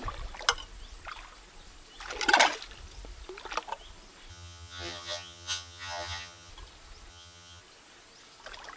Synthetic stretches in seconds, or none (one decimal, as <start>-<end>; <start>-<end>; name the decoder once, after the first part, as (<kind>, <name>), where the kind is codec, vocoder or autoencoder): 4.3-6.5 (vocoder, HiFi-GAN); 7.1-7.6